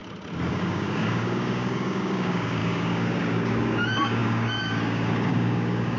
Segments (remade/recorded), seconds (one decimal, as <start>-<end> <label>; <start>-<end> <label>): 0.0-0.5 recorded; 0.5-6.0 remade